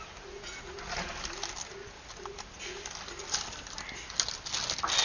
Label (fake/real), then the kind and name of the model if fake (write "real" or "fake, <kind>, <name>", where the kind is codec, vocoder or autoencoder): real